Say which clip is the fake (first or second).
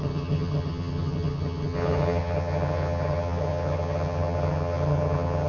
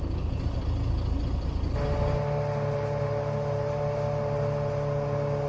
first